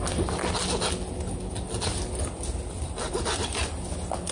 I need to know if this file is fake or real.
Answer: real